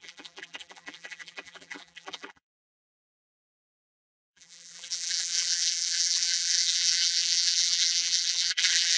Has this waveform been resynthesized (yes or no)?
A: yes